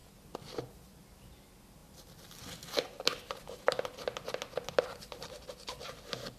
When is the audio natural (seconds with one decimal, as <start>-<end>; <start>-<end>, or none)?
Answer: 0.0-6.4